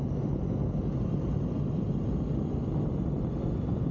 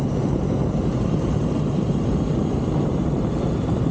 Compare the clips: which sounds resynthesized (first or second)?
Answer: second